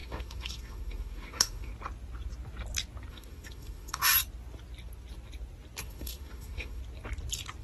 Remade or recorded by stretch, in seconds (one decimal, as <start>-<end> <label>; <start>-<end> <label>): 0.0-1.7 remade; 1.7-3.1 recorded; 3.1-4.1 remade; 4.1-5.8 recorded; 5.8-6.8 remade; 6.8-7.6 recorded